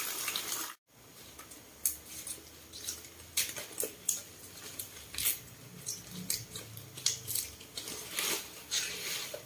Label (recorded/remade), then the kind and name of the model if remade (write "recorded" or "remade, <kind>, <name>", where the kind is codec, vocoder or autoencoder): recorded